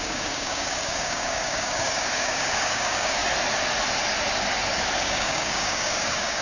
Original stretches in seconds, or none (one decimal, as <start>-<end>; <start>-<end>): 3.2-5.0